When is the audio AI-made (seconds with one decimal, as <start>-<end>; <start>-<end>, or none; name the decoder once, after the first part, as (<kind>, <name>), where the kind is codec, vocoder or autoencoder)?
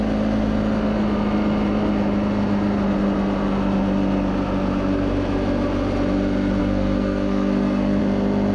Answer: 6.6-8.0 (codec, SNAC)